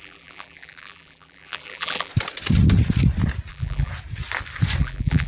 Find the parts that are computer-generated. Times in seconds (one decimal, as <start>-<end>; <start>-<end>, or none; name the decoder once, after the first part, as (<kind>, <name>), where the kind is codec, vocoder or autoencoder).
0.0-2.1 (vocoder, BigVGAN v2); 3.5-3.9; 4.8-5.3